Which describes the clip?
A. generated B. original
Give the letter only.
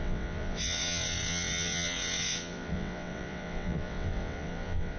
A